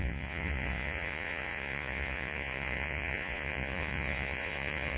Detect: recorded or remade remade